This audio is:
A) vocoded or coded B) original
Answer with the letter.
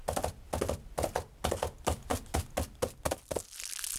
B